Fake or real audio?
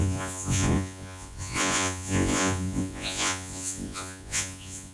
fake